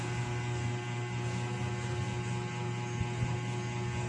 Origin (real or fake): real